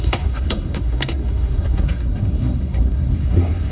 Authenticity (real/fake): fake